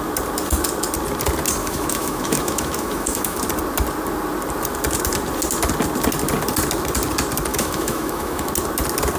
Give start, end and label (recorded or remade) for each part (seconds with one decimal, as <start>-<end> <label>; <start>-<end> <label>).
0.0-1.6 recorded; 1.6-3.4 remade; 3.4-7.5 recorded; 7.5-8.5 remade; 8.5-9.2 recorded